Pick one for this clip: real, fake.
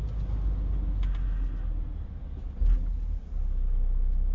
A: real